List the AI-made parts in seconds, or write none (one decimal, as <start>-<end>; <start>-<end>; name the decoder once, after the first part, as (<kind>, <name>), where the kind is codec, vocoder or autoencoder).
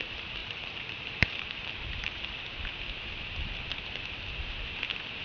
0.4-2.8 (vocoder, BigVGAN v2)